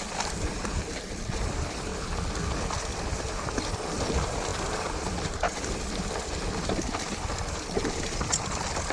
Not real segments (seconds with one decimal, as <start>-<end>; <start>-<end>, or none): 0.0-1.9; 2.5-8.9